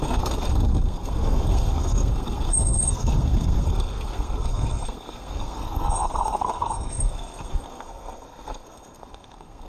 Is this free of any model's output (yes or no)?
no